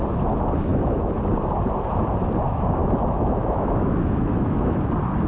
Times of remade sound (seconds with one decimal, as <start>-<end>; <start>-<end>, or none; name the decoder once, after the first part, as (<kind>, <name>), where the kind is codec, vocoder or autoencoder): 0.7-1.2 (autoencoder, DAC-VAE); 2.8-4.8